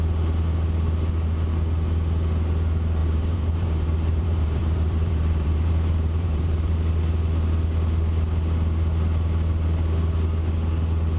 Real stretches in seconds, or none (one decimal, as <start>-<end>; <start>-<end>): 0.0-3.0; 6.7-11.2